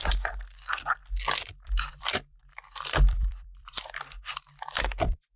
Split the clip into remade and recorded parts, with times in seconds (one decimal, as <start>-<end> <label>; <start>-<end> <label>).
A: 0.0-1.0 remade; 1.0-1.5 recorded; 1.5-5.4 remade